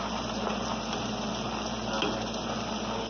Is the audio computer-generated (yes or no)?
no